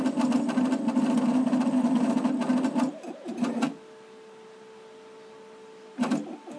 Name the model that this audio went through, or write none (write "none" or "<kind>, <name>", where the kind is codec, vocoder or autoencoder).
none